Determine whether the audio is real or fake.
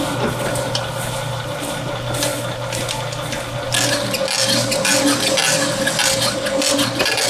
real